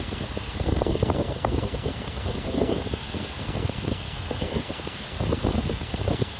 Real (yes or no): no